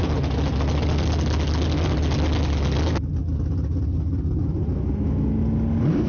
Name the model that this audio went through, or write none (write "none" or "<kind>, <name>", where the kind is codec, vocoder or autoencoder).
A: none